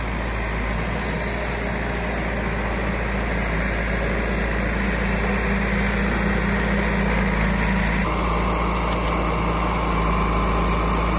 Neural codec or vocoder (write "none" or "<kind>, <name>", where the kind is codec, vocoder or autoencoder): none